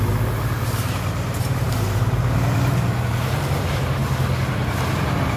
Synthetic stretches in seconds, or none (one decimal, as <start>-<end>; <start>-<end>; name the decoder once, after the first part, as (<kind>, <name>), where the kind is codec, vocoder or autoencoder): 0.0-4.0 (vocoder, BigVGAN v2); 4.5-5.4